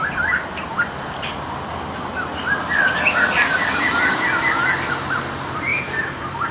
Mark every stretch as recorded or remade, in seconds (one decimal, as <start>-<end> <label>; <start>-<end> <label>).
0.0-5.7 recorded; 5.7-6.5 remade